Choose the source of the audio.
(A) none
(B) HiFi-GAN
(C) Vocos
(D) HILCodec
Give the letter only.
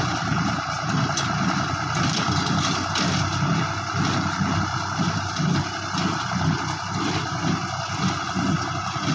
A